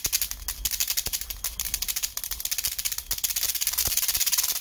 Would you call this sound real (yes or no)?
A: yes